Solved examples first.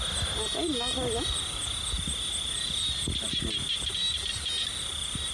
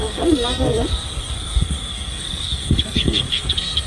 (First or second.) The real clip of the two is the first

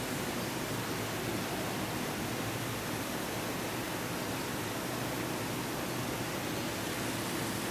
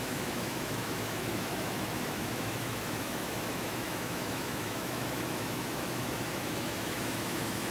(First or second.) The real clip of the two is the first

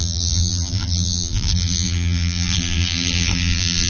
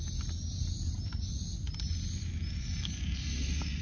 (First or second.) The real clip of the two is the second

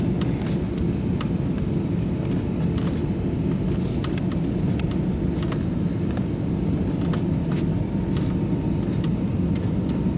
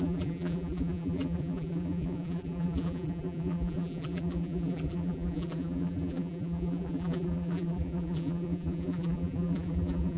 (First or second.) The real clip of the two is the first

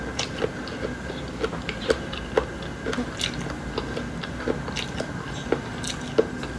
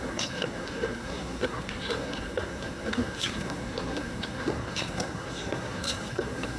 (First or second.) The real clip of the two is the first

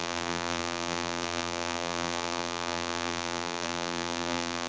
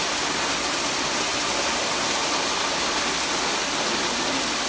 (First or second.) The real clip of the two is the second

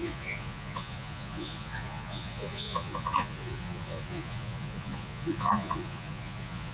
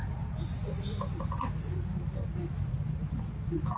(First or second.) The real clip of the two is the second